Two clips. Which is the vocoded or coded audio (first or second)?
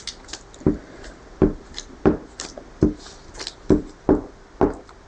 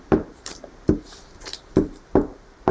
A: second